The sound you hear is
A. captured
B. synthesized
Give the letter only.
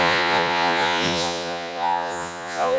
B